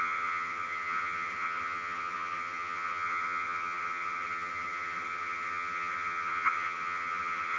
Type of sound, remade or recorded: remade